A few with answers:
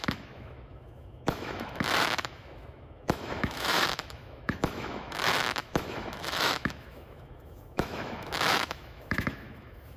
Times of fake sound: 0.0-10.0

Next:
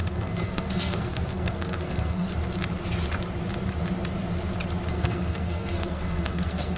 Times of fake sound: 0.0-2.3; 4.9-6.8